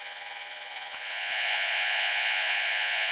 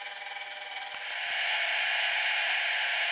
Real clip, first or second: second